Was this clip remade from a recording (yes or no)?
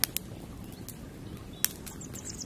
no